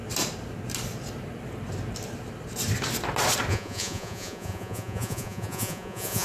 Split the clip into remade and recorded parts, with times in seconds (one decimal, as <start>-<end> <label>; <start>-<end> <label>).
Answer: 0.0-3.5 recorded; 3.5-6.2 remade